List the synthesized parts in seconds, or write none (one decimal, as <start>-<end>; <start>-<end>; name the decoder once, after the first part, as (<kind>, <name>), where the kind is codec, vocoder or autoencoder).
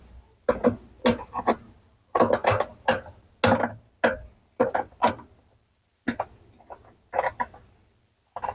none